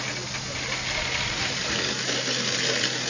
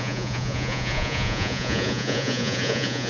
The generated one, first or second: second